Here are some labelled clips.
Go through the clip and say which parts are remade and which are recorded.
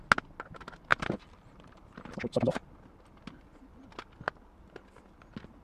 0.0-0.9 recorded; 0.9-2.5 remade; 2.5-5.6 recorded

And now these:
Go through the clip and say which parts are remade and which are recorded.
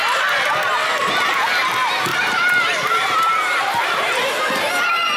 0.0-2.1 recorded; 2.1-4.1 remade; 4.1-5.2 recorded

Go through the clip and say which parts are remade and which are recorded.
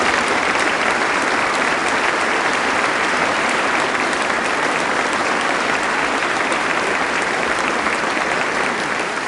0.0-1.8 remade; 1.8-2.3 recorded; 2.3-9.3 remade